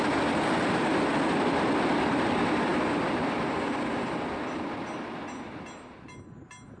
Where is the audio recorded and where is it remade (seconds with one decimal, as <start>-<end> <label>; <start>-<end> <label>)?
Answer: 0.0-6.8 recorded